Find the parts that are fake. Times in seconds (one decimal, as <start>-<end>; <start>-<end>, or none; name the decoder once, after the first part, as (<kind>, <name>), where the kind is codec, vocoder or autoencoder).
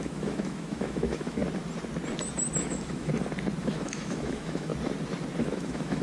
0.0-1.4 (autoencoder, DAC-VAE); 2.6-3.1; 3.6-4.7; 5.4-6.0